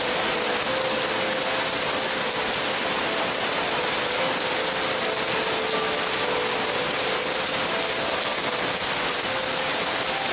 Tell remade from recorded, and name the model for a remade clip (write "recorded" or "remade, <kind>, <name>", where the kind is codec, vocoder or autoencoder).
recorded